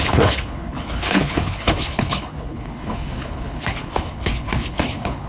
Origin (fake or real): fake